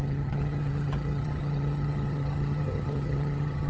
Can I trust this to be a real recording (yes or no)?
no